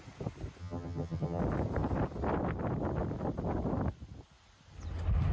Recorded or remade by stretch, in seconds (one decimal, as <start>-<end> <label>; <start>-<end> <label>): 0.0-0.6 recorded; 0.6-1.4 remade; 1.4-5.3 recorded